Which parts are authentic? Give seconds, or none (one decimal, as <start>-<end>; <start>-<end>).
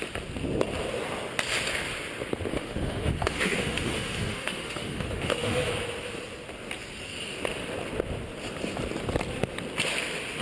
0.0-2.5; 5.7-10.4